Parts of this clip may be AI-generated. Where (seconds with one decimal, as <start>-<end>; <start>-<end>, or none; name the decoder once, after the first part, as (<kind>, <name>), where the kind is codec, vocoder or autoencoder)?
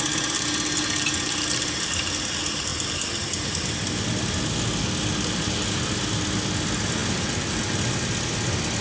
none